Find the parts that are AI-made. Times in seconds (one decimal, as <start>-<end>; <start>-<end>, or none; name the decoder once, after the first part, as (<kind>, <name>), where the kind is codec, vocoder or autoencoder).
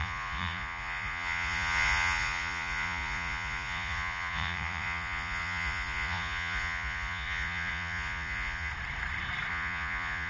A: 0.0-8.7 (vocoder, Vocos); 9.5-10.3